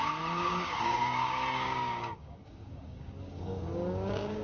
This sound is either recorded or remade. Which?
remade